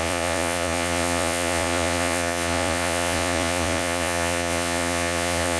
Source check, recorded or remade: remade